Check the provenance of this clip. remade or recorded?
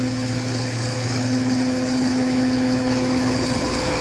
remade